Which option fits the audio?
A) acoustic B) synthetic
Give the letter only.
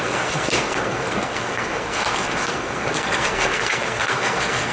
B